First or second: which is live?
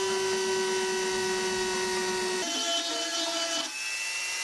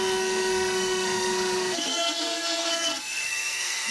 first